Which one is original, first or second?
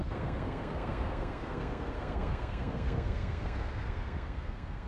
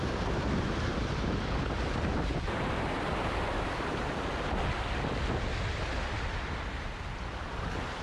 second